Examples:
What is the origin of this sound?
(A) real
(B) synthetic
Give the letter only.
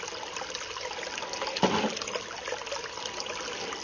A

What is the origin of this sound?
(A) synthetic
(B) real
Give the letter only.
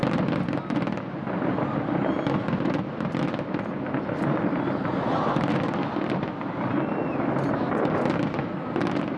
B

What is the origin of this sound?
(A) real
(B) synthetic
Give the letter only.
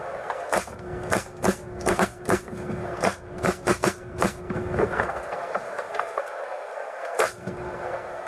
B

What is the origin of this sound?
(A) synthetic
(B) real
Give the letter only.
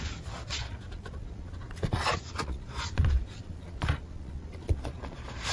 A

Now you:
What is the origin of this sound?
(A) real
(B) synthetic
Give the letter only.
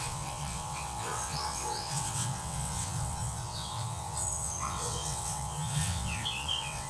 B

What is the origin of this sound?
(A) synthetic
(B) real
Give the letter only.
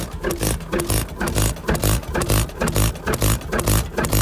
B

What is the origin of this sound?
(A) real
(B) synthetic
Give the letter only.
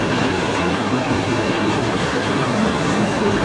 B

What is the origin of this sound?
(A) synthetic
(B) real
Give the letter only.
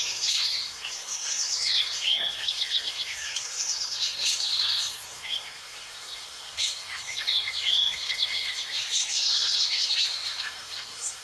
A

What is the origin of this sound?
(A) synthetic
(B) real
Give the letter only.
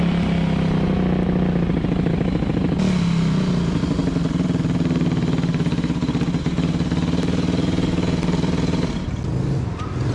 B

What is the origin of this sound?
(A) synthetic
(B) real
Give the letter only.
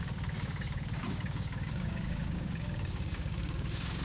A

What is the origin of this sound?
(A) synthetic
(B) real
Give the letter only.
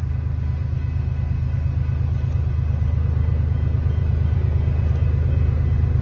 B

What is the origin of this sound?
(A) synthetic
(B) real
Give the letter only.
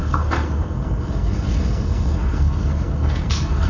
A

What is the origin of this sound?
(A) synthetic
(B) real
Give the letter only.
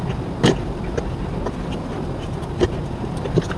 B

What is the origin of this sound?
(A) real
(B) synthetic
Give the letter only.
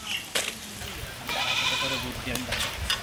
A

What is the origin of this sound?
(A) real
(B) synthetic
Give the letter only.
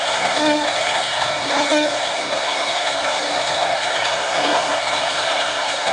B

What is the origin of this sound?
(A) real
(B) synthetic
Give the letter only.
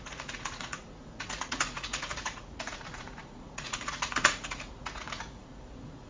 B